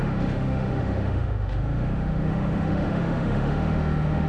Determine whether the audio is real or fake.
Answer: fake